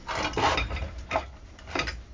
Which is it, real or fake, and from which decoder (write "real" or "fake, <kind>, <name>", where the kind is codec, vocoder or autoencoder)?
real